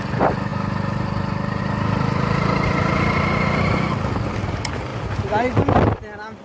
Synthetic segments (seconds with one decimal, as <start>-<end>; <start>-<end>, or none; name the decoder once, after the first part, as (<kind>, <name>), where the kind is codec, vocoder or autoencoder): none